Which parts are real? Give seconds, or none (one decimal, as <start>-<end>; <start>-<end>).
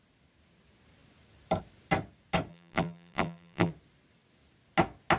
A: 0.0-2.5; 3.7-5.2